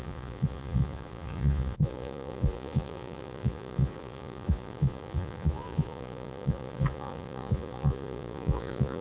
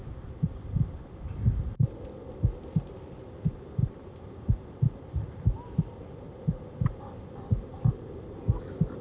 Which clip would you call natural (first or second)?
second